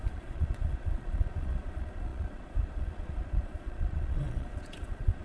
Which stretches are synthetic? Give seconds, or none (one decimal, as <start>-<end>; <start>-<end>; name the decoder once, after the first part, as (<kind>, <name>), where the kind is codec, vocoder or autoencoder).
0.0-5.2 (vocoder, Vocos)